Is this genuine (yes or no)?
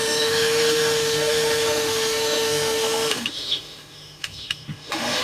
no